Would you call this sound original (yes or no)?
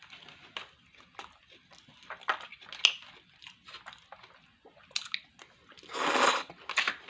yes